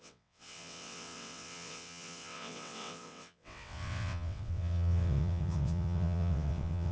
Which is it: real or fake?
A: fake